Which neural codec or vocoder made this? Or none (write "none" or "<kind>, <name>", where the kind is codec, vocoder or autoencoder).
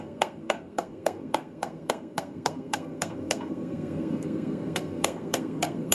codec, SNAC